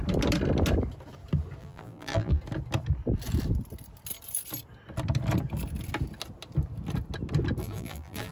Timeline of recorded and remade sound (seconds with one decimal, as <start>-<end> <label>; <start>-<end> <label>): 0.0-1.6 recorded; 1.6-2.4 remade; 2.4-7.6 recorded; 7.6-8.3 remade